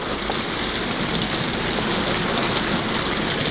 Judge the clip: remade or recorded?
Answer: recorded